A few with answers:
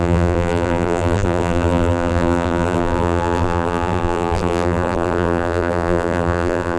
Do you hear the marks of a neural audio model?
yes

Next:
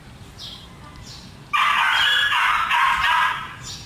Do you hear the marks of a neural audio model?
no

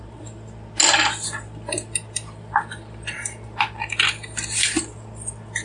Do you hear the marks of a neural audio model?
no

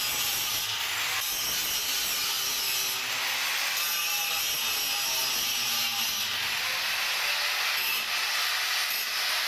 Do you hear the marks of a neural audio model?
no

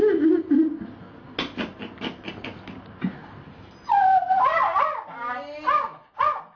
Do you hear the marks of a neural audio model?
no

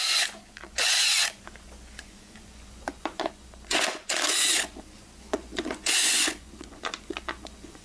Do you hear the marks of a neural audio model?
yes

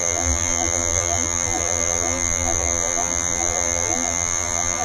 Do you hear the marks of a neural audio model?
yes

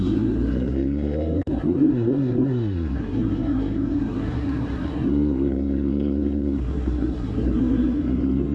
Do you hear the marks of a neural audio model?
yes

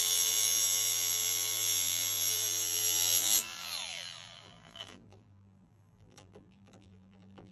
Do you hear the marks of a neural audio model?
yes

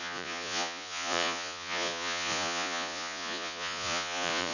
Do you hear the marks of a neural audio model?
yes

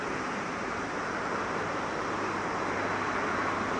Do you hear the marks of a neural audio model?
no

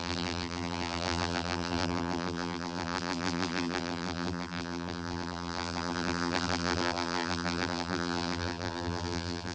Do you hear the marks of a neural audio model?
yes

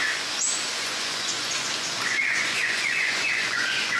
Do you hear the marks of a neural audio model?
yes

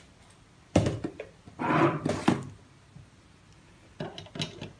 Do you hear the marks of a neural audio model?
no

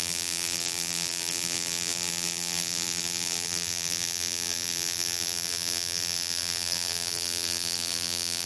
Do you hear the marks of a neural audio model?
yes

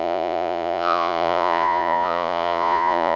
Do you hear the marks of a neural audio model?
yes